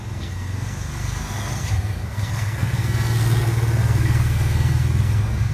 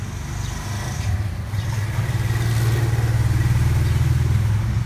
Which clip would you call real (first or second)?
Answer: second